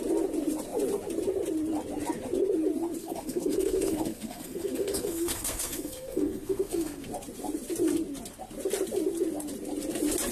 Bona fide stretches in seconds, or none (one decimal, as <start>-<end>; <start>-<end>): 0.0-3.0; 7.1-10.3